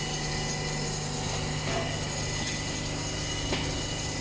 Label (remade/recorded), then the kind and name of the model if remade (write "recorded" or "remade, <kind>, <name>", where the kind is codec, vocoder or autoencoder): recorded